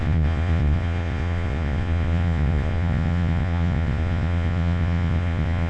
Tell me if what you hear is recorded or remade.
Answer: remade